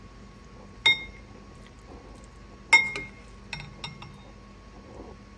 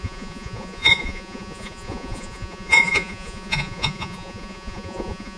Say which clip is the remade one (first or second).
second